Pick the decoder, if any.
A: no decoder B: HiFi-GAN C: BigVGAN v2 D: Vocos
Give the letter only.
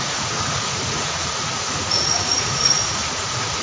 D